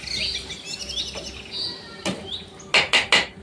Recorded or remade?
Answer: recorded